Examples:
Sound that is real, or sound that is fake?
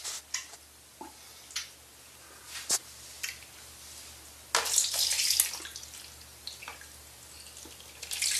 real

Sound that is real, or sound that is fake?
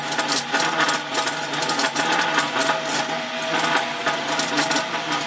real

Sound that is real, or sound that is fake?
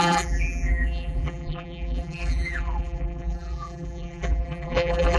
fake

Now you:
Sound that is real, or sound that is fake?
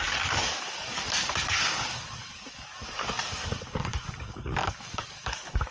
fake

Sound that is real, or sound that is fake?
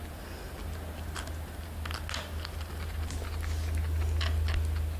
real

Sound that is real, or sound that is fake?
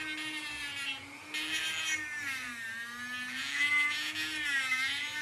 real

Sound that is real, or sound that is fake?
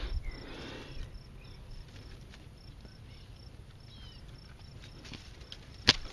real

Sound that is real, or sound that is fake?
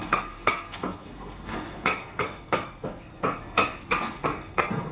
fake